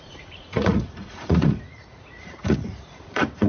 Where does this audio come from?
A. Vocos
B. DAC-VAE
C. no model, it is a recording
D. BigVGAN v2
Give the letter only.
A